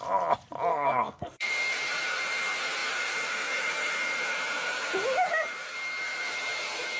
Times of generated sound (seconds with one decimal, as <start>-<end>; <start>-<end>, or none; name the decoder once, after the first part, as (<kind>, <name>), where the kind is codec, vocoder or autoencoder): 0.7-1.5 (codec, SNAC)